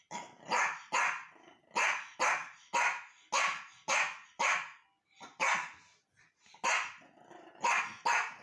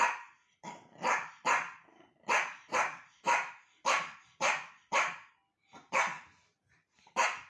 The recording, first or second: first